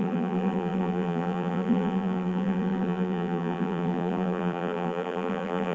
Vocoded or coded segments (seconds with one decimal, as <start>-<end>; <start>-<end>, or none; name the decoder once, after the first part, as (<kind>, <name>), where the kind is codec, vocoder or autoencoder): 0.0-5.7 (vocoder, BigVGAN v2)